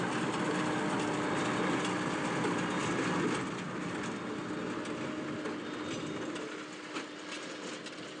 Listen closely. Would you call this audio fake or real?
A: real